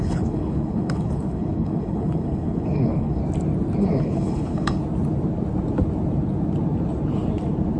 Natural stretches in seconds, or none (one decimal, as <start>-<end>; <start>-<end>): 3.2-3.8; 4.8-7.8